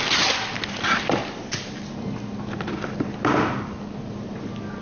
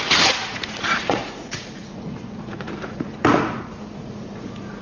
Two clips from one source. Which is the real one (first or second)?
first